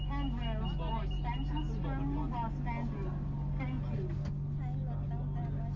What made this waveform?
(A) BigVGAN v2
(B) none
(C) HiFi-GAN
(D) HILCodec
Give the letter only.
B